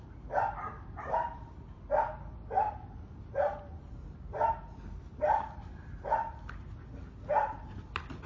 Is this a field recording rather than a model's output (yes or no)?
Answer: yes